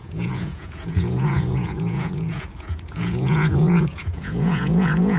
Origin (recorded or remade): remade